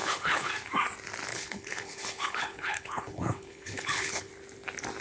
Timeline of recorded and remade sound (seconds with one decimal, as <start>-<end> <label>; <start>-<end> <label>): 0.0-0.5 remade; 0.5-1.3 recorded; 1.3-4.3 remade; 4.3-5.0 recorded